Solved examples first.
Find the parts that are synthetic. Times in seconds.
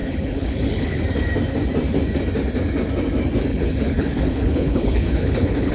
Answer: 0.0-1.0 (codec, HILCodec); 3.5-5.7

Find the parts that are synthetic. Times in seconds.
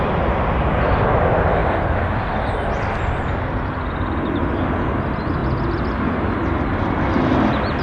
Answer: none